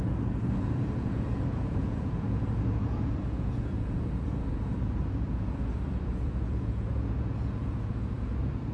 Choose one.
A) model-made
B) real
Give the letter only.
A